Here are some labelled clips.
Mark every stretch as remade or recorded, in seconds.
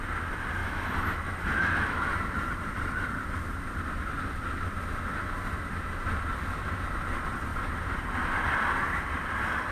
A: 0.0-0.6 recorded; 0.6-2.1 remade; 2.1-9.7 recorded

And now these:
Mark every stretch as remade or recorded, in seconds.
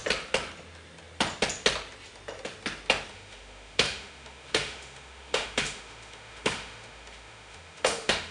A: 0.0-3.1 recorded; 3.1-8.3 remade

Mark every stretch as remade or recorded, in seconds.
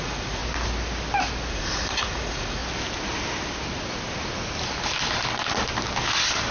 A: 0.0-0.4 remade; 0.4-1.5 recorded; 1.5-2.6 remade; 2.6-6.5 recorded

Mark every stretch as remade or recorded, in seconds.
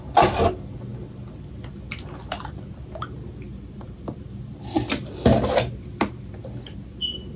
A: 0.0-3.5 recorded; 3.5-4.6 remade; 4.6-7.4 recorded